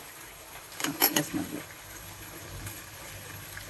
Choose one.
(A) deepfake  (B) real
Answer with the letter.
A